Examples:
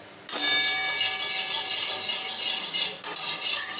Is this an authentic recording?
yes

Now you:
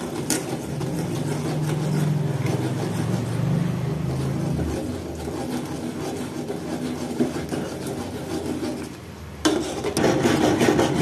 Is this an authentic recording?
yes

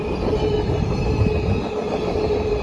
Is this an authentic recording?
yes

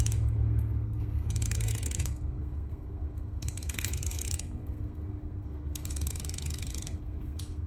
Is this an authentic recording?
no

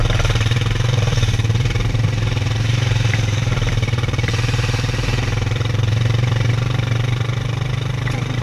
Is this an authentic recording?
no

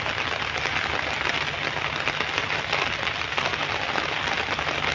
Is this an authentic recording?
yes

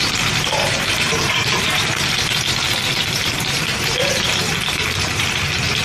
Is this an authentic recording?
no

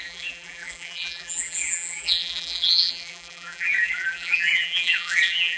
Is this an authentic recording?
no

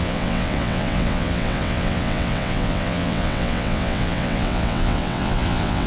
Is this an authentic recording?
no